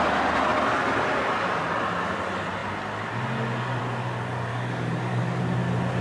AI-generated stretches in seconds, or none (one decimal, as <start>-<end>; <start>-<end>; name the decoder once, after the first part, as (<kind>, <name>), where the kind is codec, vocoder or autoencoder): 4.5-5.4 (codec, DAC)